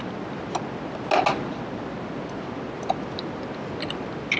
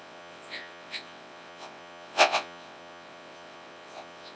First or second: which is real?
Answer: first